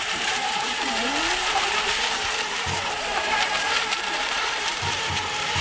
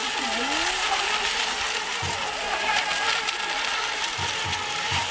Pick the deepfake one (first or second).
first